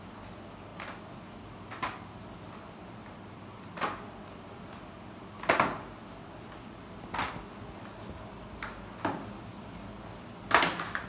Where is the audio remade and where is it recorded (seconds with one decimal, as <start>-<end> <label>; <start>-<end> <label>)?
0.0-11.1 recorded